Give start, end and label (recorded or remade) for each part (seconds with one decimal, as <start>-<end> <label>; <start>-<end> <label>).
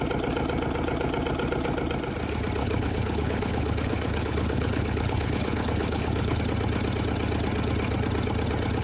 0.0-2.6 recorded; 2.6-6.4 remade; 6.4-8.8 recorded